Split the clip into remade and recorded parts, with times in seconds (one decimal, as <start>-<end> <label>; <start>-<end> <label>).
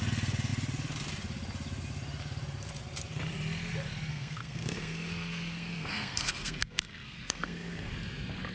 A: 0.0-4.1 recorded; 4.1-7.9 remade; 7.9-8.5 recorded